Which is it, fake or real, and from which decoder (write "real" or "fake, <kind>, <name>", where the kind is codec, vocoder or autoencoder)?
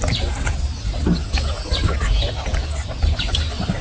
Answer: real